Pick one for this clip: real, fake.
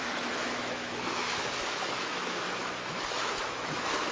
fake